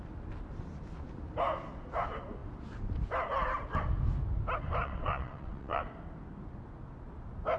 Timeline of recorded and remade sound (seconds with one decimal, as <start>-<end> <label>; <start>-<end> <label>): 0.0-4.8 recorded; 4.8-5.8 remade; 5.8-7.6 recorded